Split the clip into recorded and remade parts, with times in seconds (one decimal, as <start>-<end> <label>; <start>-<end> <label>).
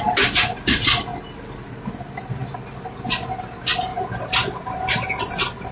0.0-5.7 recorded